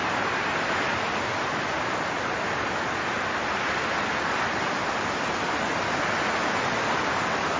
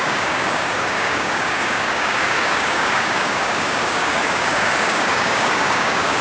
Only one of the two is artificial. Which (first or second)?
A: second